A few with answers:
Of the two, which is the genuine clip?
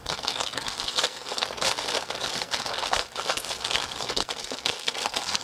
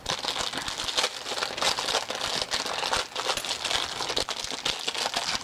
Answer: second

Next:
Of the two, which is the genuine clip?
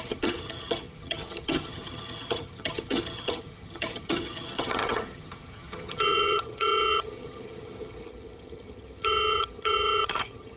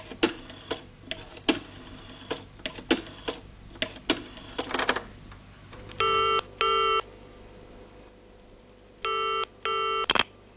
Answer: second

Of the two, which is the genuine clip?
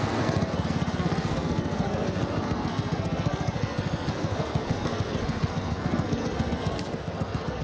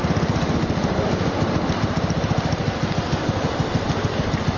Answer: second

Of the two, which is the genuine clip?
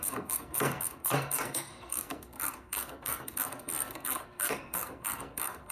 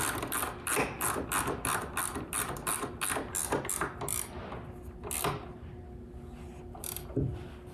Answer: second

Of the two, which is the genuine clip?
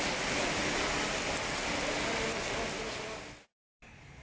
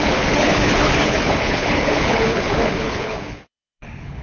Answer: first